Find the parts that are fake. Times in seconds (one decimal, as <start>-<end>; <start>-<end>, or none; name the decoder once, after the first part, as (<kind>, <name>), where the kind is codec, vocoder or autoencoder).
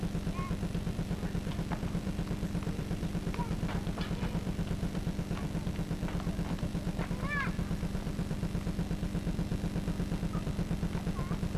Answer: 0.0-9.5 (vocoder, BigVGAN v2); 10.2-11.6